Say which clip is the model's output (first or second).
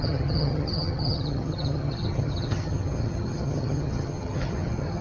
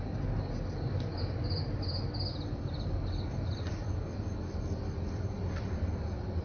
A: first